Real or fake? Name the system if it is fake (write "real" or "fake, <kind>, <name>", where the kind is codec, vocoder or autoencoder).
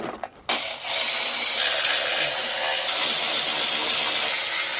real